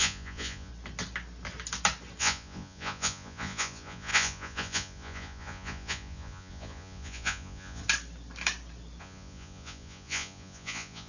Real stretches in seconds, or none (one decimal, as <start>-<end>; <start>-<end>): 0.7-2.2; 7.8-9.0

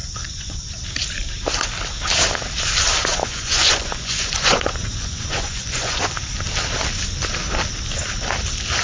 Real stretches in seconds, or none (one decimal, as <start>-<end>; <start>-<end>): 0.6-3.1; 6.2-8.8

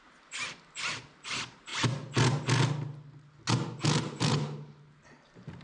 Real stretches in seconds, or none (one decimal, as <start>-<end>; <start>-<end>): 0.0-5.6

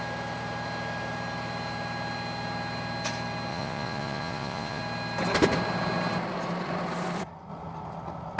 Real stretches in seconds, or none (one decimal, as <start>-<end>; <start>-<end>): 0.0-3.5; 4.8-8.4

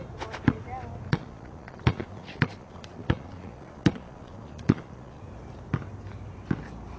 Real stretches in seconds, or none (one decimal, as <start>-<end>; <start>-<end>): 0.0-1.1; 5.2-7.0

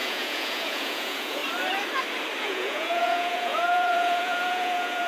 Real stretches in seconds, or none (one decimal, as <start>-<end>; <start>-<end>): 1.4-2.4

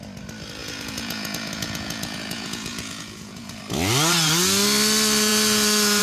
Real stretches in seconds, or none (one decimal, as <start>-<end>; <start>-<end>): 0.0-0.6; 3.6-6.0